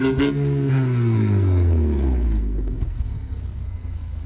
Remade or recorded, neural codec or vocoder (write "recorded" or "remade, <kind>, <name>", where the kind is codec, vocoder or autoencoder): remade, codec, SNAC